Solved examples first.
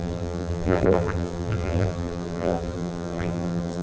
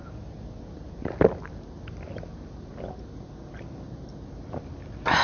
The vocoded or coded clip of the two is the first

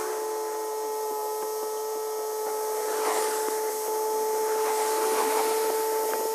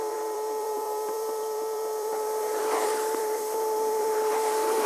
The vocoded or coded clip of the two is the second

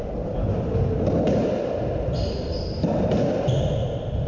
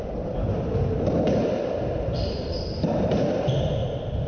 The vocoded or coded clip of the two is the second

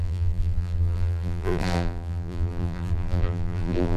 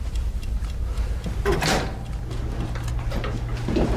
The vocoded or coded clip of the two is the first